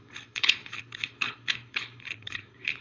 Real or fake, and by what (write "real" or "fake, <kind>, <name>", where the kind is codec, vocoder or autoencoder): fake, codec, HILCodec